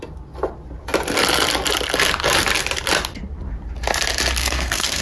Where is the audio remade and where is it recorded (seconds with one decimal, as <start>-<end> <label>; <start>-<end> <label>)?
0.0-4.4 recorded; 4.4-5.0 remade